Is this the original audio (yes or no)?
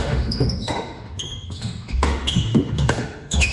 no